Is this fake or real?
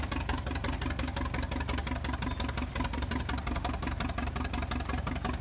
real